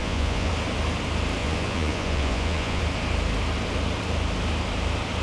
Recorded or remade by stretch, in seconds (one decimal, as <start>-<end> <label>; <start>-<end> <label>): 0.0-0.5 remade; 0.5-1.4 recorded; 1.4-2.8 remade; 2.8-5.2 recorded